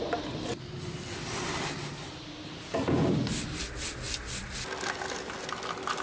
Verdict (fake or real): real